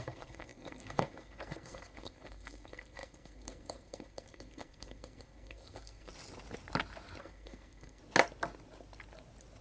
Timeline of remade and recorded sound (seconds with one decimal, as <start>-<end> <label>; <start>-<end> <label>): 0.0-6.1 remade; 6.1-7.2 recorded; 7.2-8.0 remade; 8.0-9.6 recorded